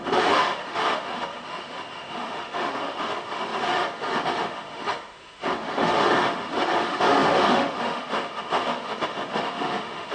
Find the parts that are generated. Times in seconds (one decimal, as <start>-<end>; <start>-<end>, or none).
0.0-10.1